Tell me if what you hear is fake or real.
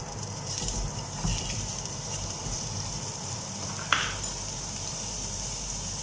fake